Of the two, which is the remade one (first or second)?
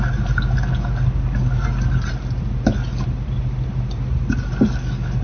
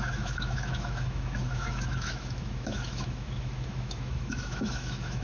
second